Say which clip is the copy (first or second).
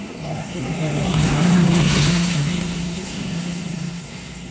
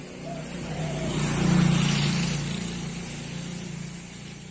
first